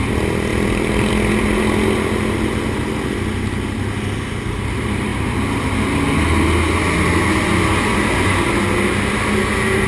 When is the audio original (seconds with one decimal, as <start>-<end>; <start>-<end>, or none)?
0.0-0.5; 1.1-9.9